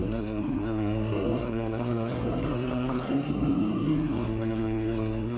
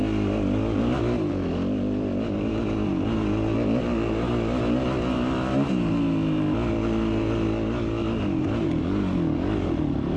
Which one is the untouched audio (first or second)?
second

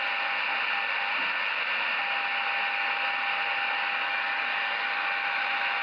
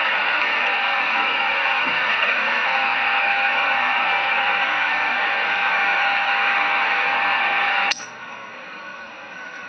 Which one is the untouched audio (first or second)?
first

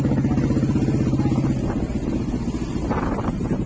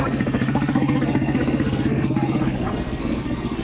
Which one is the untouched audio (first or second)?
first